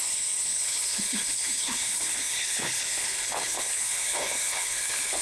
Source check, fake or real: fake